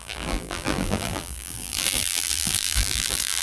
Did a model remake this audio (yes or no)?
yes